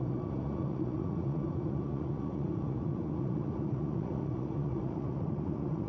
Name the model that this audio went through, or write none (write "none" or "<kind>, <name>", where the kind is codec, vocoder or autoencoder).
vocoder, Vocos